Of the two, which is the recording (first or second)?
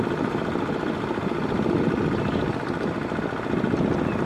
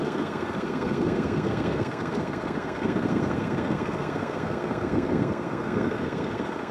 first